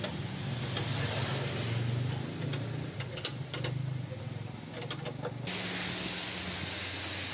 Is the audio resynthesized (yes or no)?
no